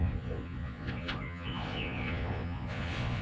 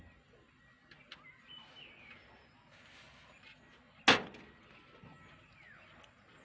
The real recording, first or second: second